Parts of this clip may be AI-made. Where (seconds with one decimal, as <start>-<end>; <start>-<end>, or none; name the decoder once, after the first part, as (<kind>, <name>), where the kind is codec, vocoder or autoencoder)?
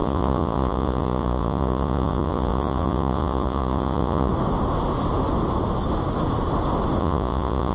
0.0-4.3 (vocoder, Vocos); 7.0-7.7